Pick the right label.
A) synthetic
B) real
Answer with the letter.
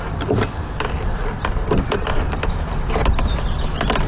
B